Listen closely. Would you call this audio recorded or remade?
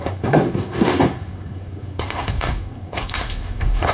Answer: remade